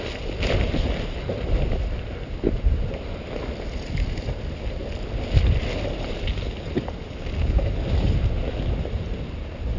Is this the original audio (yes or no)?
yes